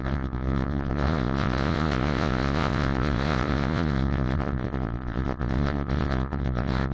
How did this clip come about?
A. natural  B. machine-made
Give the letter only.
B